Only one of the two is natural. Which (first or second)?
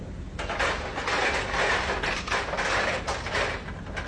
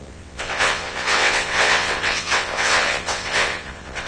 first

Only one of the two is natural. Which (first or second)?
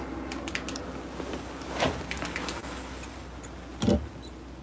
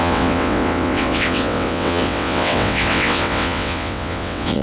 first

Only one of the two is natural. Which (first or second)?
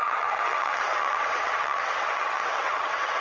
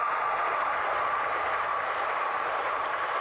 second